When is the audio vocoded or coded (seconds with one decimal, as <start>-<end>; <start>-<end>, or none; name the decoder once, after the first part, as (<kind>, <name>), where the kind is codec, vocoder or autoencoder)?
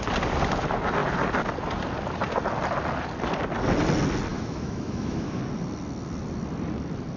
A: 4.3-5.4 (autoencoder, DAC-VAE)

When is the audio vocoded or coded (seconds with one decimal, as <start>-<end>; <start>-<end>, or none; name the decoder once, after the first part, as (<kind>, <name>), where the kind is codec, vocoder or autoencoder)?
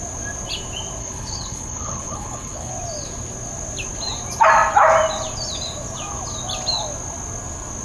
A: 1.0-2.7 (codec, HILCodec)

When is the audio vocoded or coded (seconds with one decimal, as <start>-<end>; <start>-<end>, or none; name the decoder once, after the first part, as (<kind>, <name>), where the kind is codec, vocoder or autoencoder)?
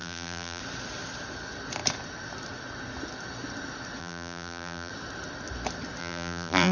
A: 0.0-0.6 (vocoder, BigVGAN v2); 4.0-4.9; 6.0-6.7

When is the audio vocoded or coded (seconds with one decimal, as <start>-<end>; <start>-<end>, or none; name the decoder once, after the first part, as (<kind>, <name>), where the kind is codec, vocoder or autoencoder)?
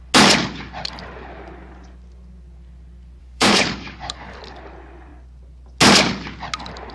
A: 3.2-4.4 (codec, DAC)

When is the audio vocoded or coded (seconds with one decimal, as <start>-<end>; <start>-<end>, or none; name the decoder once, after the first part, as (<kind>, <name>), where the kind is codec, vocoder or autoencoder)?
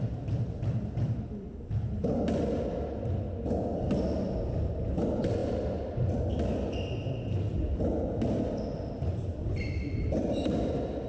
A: none